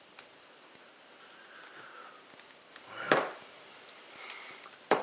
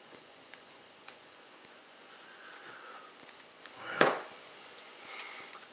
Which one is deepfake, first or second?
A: second